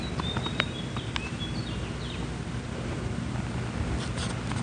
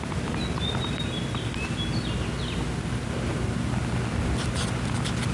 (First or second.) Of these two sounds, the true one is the second